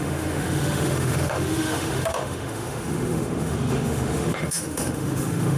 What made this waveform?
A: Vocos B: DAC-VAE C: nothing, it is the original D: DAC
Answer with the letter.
B